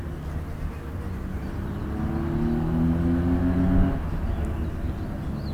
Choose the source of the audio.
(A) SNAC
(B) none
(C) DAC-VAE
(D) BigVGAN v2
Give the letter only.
B